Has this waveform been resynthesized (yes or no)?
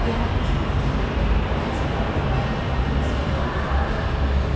no